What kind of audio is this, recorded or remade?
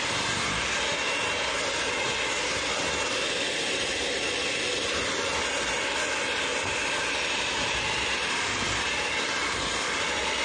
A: recorded